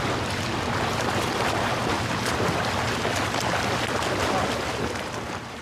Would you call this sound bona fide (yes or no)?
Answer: yes